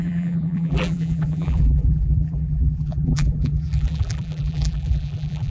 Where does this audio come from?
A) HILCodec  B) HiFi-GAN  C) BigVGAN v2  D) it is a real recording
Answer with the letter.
C